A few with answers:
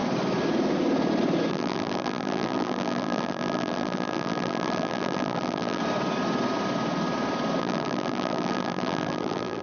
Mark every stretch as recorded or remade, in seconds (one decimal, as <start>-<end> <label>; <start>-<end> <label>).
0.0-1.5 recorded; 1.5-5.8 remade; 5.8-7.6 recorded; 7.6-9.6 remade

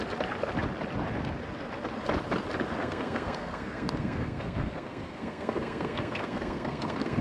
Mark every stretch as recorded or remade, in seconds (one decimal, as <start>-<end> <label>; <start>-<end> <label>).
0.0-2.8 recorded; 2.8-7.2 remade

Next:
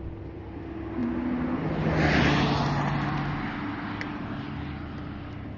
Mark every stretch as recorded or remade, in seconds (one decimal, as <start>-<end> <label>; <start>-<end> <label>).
0.0-5.6 recorded